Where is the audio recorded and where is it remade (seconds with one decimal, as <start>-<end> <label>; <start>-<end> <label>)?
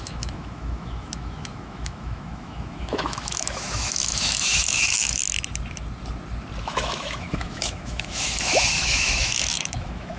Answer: 0.0-5.2 remade; 5.2-6.6 recorded; 6.6-10.2 remade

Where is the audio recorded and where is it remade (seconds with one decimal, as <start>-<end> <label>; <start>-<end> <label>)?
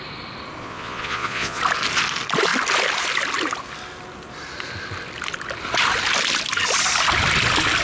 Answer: 0.0-0.6 recorded; 0.6-1.6 remade; 1.6-7.8 recorded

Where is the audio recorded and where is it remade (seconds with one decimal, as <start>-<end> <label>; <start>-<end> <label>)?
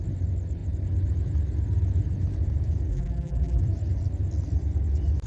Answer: 0.0-2.9 recorded; 2.9-3.6 remade; 3.6-5.3 recorded